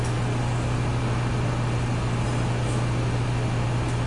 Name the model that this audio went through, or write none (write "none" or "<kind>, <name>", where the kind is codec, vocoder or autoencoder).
none